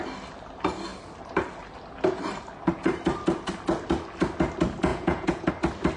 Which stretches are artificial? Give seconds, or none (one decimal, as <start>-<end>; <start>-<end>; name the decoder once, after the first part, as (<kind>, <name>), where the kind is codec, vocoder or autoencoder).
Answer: 4.9-5.5 (vocoder, Vocos)